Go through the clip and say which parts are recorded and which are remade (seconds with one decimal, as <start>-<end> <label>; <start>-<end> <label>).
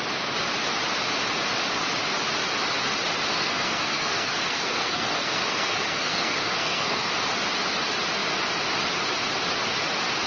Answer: 0.0-3.3 recorded; 3.3-7.1 remade; 7.1-10.3 recorded